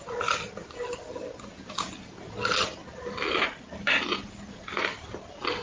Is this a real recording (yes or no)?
yes